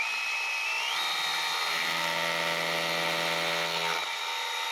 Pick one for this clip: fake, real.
real